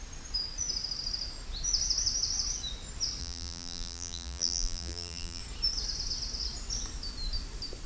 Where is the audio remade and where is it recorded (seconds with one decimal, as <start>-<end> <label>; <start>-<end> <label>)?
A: 0.0-3.2 recorded; 3.2-5.4 remade; 5.4-7.9 recorded

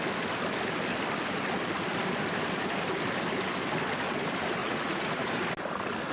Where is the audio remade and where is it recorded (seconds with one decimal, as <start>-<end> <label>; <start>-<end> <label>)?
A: 0.0-4.6 recorded; 4.6-5.3 remade; 5.3-6.1 recorded

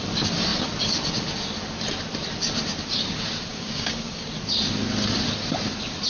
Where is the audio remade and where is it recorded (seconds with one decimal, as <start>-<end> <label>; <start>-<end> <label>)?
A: 0.0-3.5 recorded; 3.5-4.3 remade; 4.3-6.1 recorded

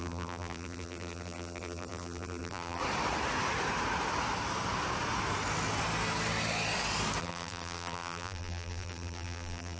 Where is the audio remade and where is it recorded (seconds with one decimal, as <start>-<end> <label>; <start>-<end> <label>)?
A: 0.0-2.8 remade; 2.8-7.2 recorded; 7.2-9.8 remade

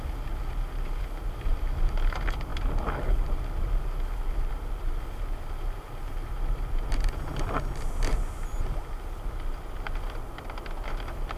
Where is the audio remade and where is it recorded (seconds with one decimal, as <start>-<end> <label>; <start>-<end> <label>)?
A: 0.0-11.4 recorded